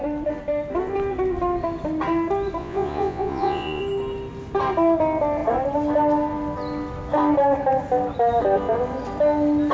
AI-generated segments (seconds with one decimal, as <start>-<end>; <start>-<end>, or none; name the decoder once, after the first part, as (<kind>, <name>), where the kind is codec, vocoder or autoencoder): 2.6-3.8 (vocoder, Vocos)